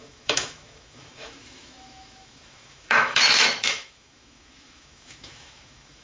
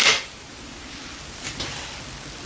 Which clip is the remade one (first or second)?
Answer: first